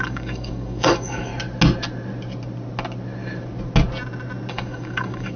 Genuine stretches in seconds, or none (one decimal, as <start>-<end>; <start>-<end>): 1.3-4.5